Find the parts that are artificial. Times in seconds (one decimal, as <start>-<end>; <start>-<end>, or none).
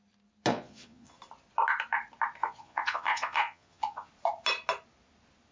0.5-1.2; 2.4-4.1